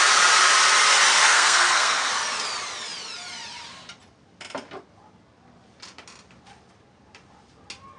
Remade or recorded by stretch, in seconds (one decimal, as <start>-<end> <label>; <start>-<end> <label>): 0.0-1.1 recorded; 1.1-2.1 remade; 2.1-8.0 recorded